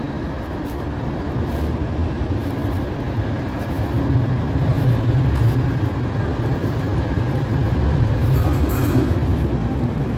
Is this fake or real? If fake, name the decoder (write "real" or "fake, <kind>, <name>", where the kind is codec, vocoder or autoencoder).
real